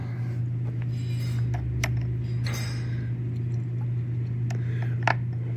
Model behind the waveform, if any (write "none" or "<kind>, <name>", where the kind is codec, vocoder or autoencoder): none